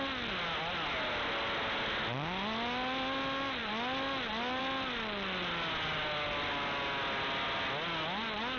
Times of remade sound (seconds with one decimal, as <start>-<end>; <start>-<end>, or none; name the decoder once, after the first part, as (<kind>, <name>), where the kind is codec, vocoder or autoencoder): none